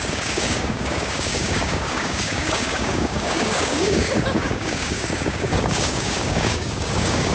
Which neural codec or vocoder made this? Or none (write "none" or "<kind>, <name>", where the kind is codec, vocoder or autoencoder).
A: codec, DAC